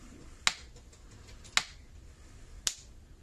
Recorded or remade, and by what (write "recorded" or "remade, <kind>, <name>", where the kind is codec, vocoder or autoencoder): recorded